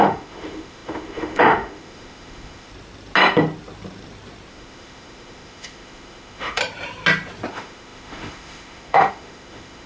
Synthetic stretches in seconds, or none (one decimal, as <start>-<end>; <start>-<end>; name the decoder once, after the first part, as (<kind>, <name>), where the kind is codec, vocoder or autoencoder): 0.0-2.7 (autoencoder, DAC-VAE); 4.5-6.6; 7.5-9.9